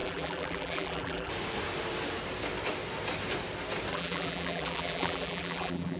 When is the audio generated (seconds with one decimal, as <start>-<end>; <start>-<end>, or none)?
0.0-1.3; 3.9-6.0